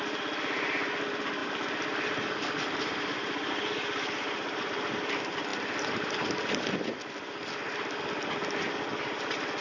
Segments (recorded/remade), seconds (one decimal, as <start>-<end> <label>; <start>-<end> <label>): 0.0-1.4 recorded; 1.4-3.5 remade; 3.5-9.6 recorded